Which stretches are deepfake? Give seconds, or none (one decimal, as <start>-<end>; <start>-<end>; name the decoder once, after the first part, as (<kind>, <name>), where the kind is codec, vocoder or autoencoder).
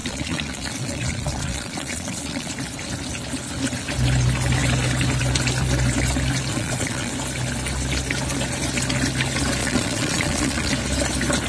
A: 0.0-2.5 (vocoder, Vocos); 6.5-7.1; 9.6-10.7